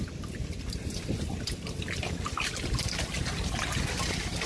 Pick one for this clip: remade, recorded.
recorded